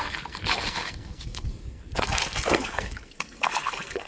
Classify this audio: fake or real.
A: fake